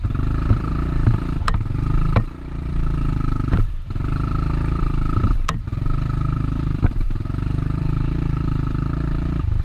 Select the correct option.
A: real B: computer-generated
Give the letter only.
B